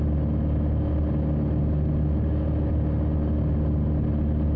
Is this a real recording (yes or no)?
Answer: yes